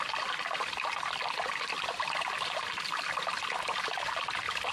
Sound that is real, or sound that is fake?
real